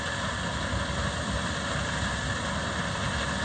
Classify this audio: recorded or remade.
recorded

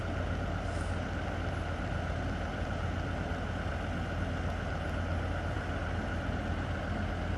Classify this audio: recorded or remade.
recorded